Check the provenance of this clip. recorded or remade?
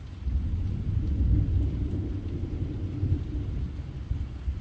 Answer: recorded